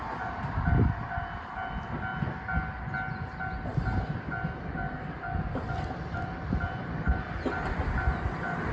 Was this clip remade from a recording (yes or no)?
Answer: no